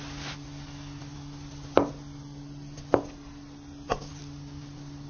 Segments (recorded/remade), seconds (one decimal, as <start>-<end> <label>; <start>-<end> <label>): 0.0-5.1 recorded